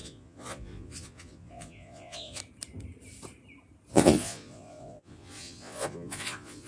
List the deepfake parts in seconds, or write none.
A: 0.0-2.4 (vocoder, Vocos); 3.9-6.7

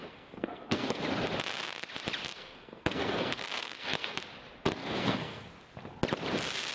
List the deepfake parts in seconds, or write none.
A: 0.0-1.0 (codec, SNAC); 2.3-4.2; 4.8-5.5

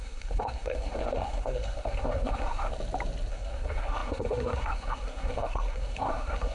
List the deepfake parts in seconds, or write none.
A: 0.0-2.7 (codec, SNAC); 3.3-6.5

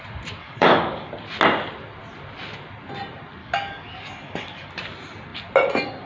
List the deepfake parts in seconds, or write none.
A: 0.4-1.1 (codec, DAC); 3.4-4.7

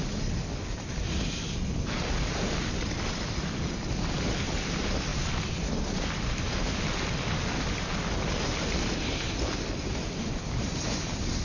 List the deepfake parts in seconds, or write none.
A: none

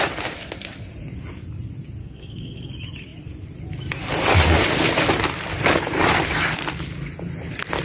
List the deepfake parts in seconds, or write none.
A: 2.0-2.7 (codec, SNAC)

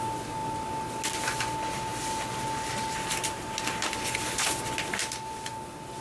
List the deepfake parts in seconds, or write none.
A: none